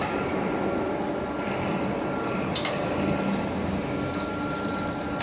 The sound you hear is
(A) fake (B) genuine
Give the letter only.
B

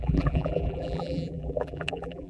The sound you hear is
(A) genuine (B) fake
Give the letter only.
B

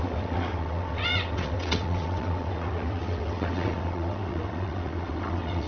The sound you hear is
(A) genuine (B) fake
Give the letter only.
B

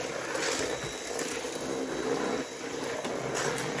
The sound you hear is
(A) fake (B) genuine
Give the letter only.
B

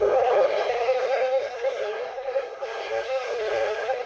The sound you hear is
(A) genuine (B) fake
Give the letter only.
B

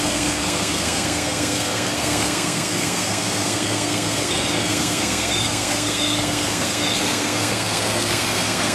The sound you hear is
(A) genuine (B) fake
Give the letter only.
B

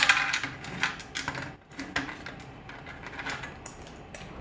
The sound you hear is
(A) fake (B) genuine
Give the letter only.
B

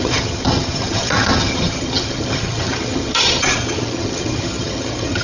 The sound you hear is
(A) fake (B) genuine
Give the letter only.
A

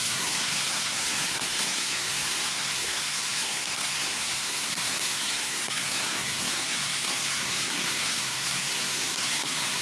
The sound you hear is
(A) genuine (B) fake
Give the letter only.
B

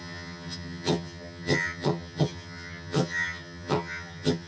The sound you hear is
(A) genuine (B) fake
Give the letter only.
B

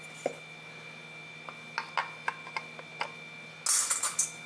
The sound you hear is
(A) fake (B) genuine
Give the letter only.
B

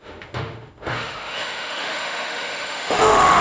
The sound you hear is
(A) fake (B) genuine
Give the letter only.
A